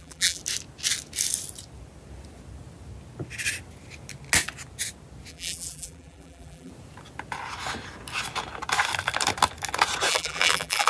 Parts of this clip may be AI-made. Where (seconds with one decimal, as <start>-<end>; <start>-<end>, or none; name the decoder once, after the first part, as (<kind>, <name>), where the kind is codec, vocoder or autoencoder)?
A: 0.0-0.4 (vocoder, BigVGAN v2); 5.3-6.7; 10.1-10.9